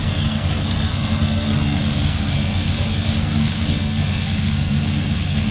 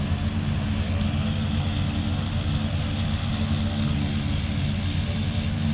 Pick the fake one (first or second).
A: first